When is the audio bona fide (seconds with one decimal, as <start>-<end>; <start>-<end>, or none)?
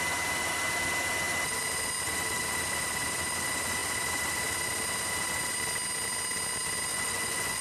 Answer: 0.0-6.9